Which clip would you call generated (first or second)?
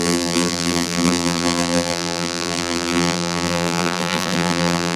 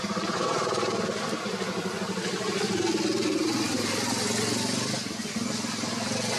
first